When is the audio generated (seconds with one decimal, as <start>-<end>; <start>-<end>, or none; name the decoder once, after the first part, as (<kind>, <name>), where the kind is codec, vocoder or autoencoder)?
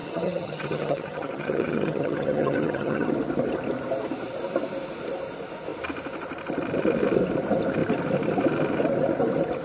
0.0-3.1 (vocoder, HiFi-GAN)